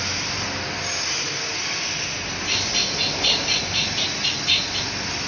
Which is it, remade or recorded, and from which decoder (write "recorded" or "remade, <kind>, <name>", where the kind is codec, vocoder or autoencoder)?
recorded